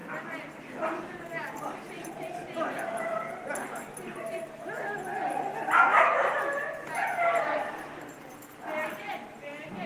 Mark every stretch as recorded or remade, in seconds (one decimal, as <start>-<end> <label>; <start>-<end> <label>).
0.0-9.9 recorded